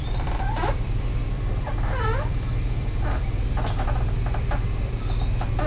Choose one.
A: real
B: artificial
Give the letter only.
B